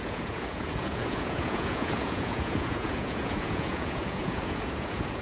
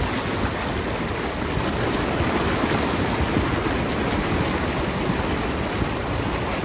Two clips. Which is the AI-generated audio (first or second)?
first